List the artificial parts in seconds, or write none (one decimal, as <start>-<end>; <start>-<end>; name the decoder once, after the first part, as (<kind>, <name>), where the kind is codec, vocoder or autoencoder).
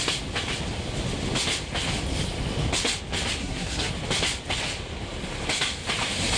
3.4-3.9 (codec, SNAC)